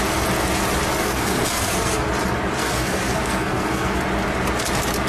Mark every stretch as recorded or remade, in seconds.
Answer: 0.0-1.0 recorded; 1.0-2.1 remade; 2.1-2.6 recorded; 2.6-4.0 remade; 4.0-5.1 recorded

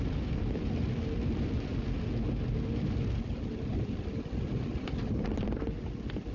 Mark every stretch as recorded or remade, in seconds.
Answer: 0.0-1.7 remade; 1.7-3.7 recorded; 3.7-6.3 remade